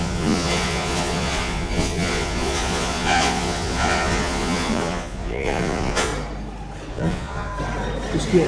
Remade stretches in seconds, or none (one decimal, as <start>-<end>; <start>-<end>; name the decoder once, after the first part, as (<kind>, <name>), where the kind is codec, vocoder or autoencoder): 0.0-6.1 (vocoder, Vocos); 6.9-7.5